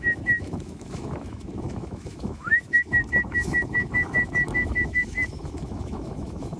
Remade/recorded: remade